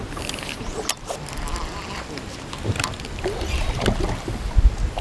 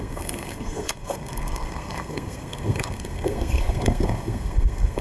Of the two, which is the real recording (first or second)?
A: first